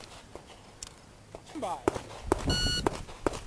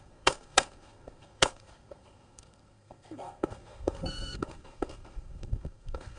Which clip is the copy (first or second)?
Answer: second